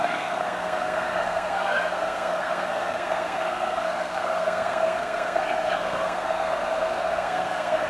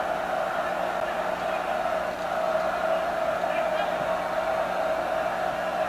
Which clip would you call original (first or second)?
second